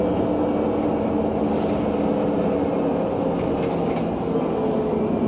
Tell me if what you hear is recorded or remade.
recorded